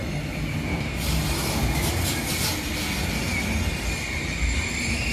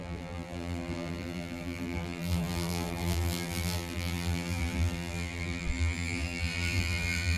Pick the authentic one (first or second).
first